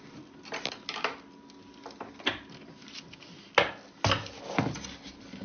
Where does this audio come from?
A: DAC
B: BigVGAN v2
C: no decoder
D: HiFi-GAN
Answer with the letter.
C